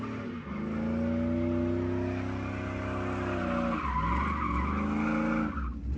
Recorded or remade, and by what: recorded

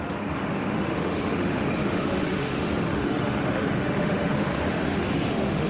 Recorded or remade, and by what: remade, autoencoder, DAC-VAE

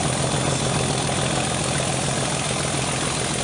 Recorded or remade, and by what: recorded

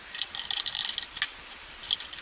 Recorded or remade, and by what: recorded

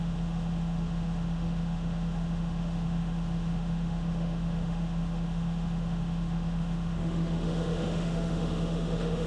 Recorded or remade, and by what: remade, autoencoder, DAC-VAE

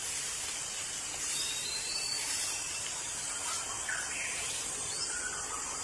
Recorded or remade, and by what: recorded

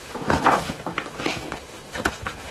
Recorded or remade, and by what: remade, autoencoder, DAC-VAE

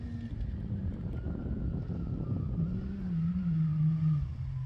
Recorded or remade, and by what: recorded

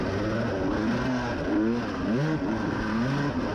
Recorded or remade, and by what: recorded